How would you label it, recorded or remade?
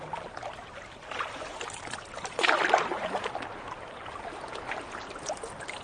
recorded